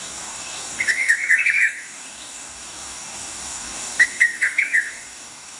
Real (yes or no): no